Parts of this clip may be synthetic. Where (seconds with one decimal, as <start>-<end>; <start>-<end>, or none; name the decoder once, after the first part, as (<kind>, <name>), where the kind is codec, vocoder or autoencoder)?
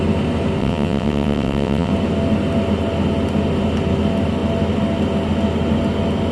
0.6-1.9 (vocoder, WaveNeXt)